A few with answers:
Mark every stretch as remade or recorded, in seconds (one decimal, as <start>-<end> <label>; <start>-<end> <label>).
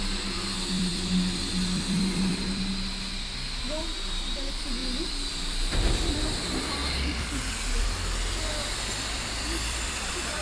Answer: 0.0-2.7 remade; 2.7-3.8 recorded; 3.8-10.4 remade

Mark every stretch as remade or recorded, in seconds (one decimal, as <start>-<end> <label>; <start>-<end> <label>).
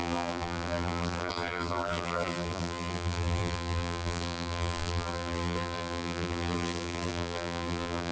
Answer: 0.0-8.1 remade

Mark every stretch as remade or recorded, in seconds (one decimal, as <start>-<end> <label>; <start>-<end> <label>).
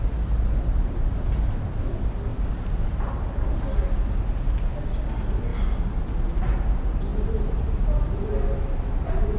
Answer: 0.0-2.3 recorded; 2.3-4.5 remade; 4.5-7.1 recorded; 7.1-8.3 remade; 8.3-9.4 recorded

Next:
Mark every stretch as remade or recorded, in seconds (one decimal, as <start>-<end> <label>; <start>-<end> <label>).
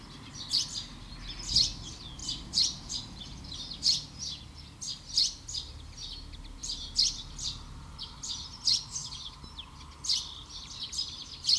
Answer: 0.0-2.2 recorded; 2.2-2.9 remade; 2.9-6.6 recorded; 6.6-8.3 remade; 8.3-11.6 recorded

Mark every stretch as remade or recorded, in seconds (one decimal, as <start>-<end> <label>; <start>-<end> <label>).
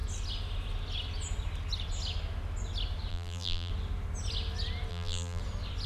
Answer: 0.0-3.1 recorded; 3.1-3.7 remade; 3.7-4.9 recorded; 4.9-5.4 remade; 5.4-5.9 recorded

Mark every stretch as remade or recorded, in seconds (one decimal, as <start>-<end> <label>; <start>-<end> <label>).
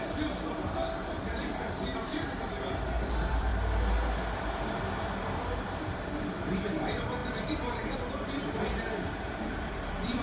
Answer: 0.0-3.5 remade; 3.5-4.7 recorded; 4.7-10.2 remade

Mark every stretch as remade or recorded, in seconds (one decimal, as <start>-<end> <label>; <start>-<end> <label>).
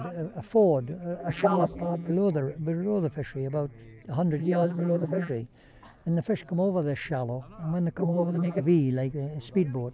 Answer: 0.0-1.2 recorded; 1.2-2.1 remade; 2.1-4.4 recorded; 4.4-5.3 remade; 5.3-8.0 recorded; 8.0-8.6 remade; 8.6-9.9 recorded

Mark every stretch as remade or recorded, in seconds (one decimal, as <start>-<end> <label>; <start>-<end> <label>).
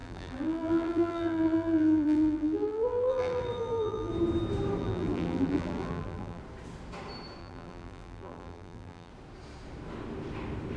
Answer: 0.0-4.1 remade; 4.1-4.8 recorded; 4.8-6.4 remade; 6.4-7.4 recorded; 7.4-9.1 remade; 9.1-10.8 recorded